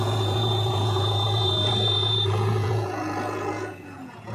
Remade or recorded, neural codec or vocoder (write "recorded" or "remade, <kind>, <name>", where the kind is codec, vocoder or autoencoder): remade, vocoder, Vocos